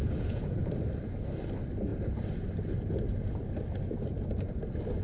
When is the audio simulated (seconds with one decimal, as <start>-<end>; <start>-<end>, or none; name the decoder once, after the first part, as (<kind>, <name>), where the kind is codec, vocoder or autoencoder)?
0.0-0.6 (vocoder, Vocos)